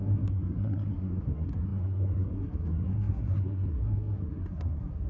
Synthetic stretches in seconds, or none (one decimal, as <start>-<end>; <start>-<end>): 0.0-5.1